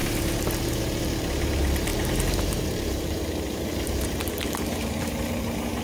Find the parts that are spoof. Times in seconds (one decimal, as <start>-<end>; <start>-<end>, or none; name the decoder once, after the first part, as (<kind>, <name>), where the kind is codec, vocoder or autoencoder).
0.8-5.8 (vocoder, BigVGAN v2)